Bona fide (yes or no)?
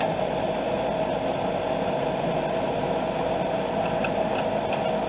yes